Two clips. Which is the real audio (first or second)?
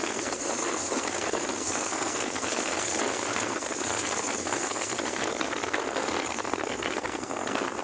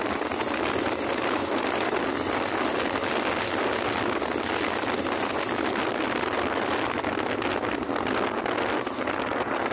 second